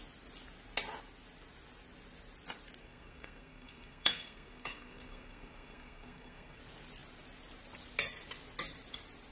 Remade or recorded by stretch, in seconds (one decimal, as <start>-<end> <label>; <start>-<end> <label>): 0.0-2.8 recorded; 2.8-6.6 remade; 6.6-9.3 recorded